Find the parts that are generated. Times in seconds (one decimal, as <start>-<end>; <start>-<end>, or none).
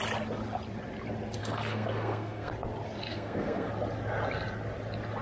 1.4-2.5; 3.1-3.7